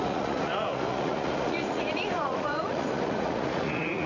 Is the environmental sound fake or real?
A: fake